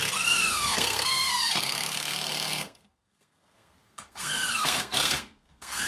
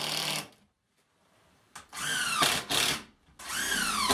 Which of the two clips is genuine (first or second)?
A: second